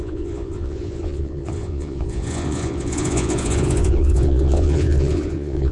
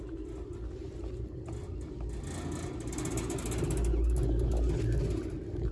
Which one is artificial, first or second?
first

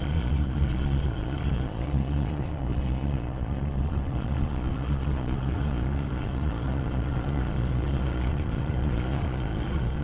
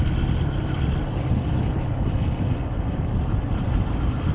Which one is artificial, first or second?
first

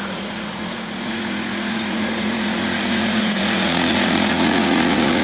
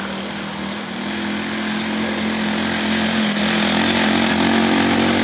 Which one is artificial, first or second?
first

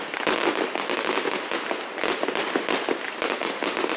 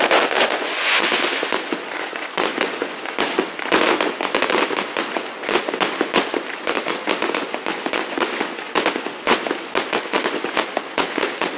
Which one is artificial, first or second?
second